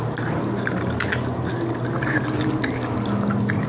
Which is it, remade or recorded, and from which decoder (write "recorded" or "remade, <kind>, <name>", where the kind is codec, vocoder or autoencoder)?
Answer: recorded